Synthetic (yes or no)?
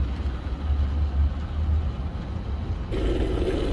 no